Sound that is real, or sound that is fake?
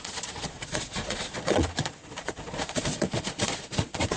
fake